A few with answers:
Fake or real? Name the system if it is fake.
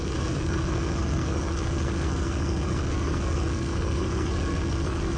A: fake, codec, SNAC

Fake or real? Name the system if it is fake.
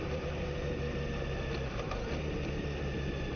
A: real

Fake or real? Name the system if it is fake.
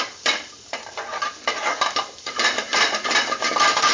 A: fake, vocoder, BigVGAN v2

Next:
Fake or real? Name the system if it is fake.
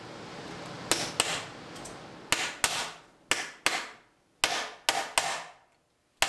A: real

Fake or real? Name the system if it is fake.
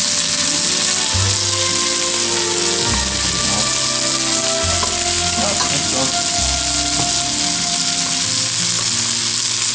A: real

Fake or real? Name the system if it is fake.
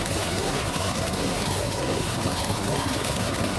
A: fake, codec, SNAC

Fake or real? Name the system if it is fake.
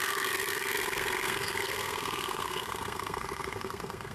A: fake, codec, SNAC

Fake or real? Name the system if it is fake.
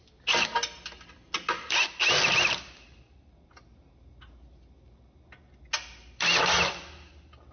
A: real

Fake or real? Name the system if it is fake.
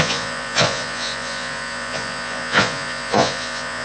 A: fake, vocoder, Vocos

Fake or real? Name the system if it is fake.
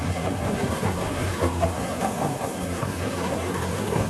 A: fake, codec, SNAC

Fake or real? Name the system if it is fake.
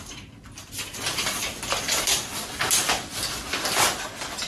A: real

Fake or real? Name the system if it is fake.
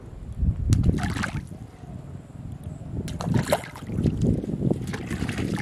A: real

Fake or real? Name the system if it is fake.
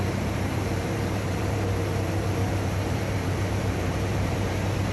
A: fake, vocoder, BigVGAN v2